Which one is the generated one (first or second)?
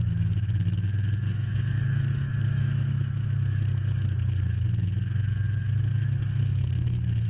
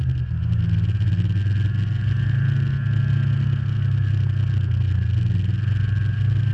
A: first